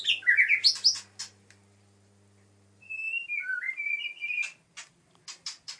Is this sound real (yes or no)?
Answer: yes